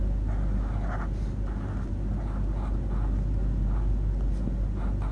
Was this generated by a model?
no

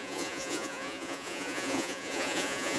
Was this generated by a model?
yes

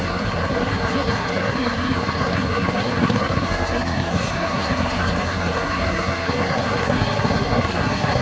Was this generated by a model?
yes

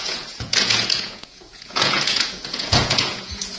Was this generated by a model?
yes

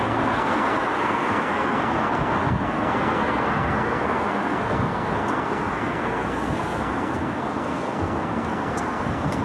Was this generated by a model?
yes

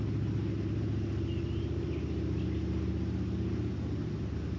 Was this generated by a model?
no